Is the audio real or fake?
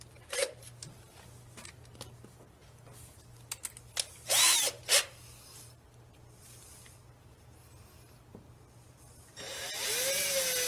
real